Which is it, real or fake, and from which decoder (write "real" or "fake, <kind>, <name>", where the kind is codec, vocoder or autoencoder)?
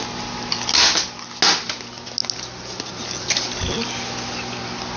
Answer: real